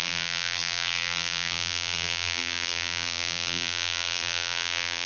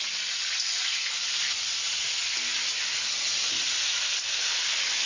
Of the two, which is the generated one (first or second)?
first